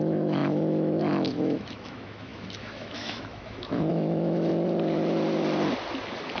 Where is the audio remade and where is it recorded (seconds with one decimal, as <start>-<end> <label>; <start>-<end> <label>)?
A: 0.0-4.5 remade; 4.5-6.4 recorded